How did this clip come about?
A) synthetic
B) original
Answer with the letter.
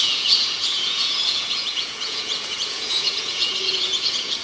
A